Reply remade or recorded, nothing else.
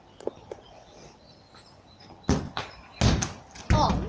recorded